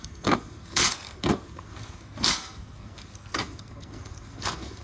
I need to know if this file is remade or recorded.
remade